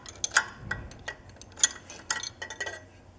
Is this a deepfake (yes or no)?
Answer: no